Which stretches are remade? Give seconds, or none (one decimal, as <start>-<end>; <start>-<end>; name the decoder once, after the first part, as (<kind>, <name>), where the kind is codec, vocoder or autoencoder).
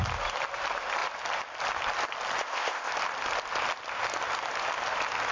2.4-2.9 (codec, ZipCodec)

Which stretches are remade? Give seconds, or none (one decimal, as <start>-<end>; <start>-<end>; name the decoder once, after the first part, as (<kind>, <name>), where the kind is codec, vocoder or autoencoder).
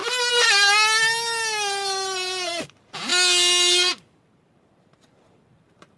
2.6-3.1 (vocoder, BigVGAN v2); 3.9-6.0